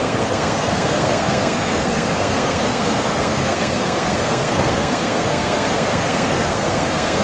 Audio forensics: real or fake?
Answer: fake